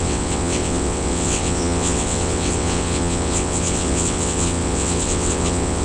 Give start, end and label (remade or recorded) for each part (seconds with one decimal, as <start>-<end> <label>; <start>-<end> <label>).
0.0-5.8 remade